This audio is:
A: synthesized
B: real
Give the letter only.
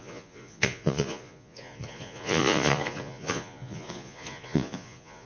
A